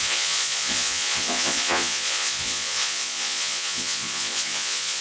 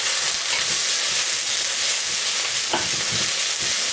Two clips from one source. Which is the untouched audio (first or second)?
second